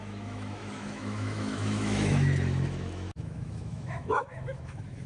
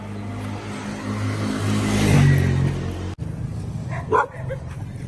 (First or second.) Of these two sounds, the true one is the second